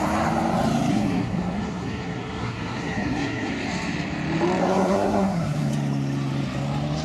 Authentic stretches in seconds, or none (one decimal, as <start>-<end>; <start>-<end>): 0.0-0.9; 3.5-4.6; 5.7-7.0